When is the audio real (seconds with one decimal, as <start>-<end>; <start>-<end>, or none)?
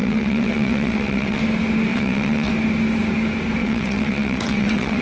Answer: 1.4-1.9; 2.5-3.6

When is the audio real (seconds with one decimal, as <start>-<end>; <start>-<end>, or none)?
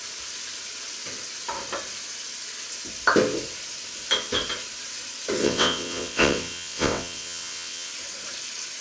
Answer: 0.0-5.4; 7.9-8.8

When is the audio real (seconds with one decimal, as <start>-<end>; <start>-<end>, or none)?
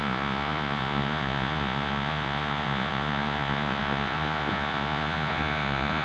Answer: none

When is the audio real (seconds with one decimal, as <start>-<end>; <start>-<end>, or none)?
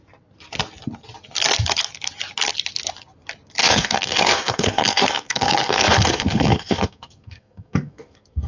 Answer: 0.0-3.6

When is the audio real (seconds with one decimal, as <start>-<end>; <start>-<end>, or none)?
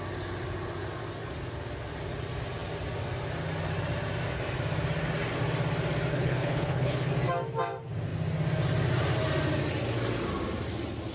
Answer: 0.0-6.1; 7.1-11.1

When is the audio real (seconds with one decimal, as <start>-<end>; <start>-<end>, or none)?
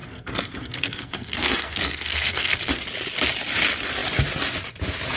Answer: 2.6-5.2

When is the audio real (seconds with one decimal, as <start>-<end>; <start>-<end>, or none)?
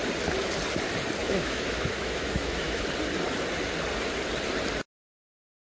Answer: 0.0-1.2; 2.8-5.7